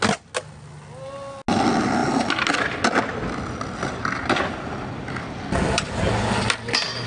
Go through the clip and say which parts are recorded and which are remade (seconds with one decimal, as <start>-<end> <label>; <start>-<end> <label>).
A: 0.0-7.1 recorded